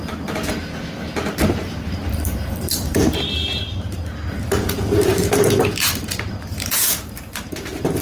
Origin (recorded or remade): remade